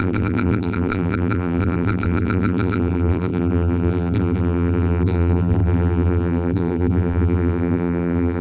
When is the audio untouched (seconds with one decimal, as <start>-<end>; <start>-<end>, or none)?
none